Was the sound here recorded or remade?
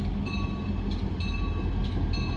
recorded